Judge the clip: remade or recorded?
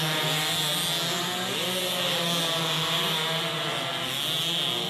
recorded